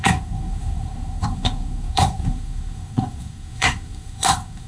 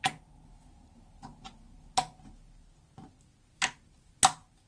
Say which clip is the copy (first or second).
first